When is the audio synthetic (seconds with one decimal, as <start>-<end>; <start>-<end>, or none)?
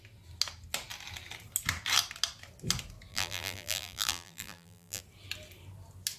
3.1-5.0